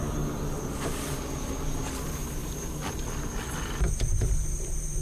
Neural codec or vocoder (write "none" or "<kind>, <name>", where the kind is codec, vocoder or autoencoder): none